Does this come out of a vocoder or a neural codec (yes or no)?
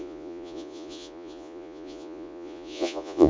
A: yes